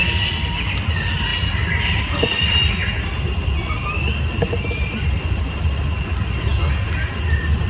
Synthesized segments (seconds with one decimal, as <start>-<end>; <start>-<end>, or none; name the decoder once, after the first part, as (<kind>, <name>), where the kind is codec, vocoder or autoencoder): none